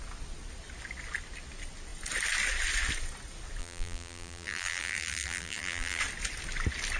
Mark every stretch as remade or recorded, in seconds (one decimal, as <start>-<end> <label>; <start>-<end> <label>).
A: 0.0-3.6 recorded; 3.6-6.0 remade; 6.0-7.0 recorded